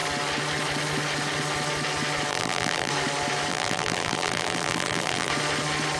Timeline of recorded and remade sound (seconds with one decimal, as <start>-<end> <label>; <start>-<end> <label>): 0.0-2.3 recorded; 2.3-2.9 remade; 2.9-3.5 recorded; 3.5-5.3 remade; 5.3-6.0 recorded